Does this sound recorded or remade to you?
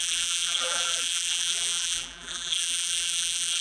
remade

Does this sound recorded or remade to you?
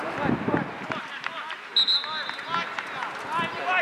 recorded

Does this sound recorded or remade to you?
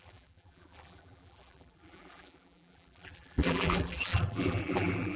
remade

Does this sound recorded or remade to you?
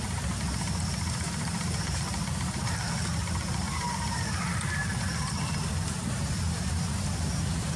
remade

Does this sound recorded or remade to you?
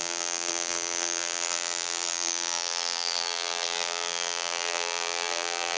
remade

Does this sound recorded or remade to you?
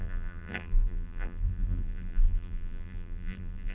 remade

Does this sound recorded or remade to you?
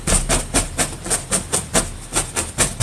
recorded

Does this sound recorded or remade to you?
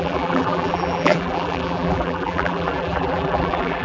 remade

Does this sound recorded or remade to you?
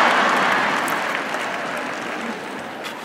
recorded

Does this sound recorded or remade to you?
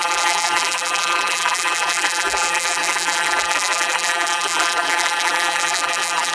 remade